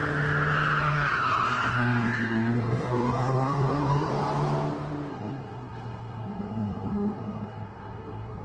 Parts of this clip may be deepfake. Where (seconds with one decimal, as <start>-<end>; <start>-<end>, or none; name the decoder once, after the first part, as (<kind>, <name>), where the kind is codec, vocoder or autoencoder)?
0.8-4.1 (codec, SNAC); 5.1-8.4